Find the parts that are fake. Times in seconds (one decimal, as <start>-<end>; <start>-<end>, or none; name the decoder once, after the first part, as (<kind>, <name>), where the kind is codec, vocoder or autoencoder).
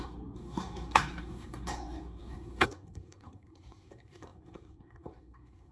0.0-5.7 (codec, SNAC)